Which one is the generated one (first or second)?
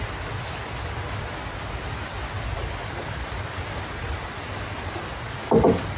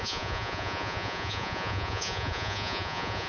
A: second